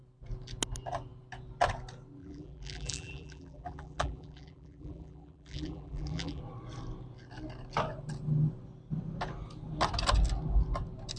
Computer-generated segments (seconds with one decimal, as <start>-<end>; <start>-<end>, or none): 2.2-6.4